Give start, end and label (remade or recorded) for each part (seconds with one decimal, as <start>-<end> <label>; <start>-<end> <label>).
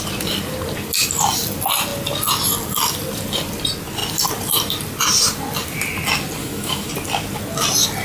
0.0-6.4 recorded; 6.4-6.9 remade; 6.9-8.0 recorded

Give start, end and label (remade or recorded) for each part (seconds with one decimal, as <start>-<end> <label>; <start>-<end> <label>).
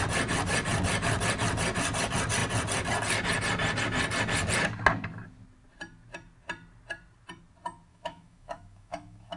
0.0-7.9 recorded; 7.9-9.4 remade